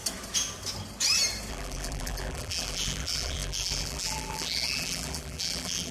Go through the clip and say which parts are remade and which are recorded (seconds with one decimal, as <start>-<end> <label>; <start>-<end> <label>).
0.0-1.5 recorded; 1.5-5.9 remade